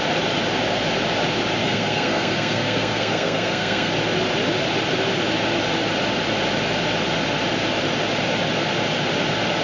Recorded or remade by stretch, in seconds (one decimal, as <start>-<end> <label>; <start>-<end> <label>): 0.0-1.6 recorded; 1.6-3.9 remade; 3.9-9.6 recorded